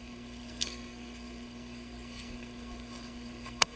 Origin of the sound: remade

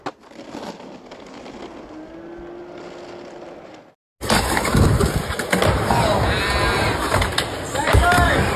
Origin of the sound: recorded